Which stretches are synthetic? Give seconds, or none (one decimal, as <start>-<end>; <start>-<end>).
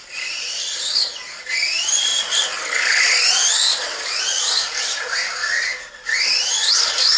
0.0-2.1; 3.8-5.4; 6.2-7.2